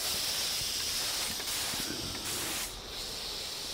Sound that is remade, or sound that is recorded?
recorded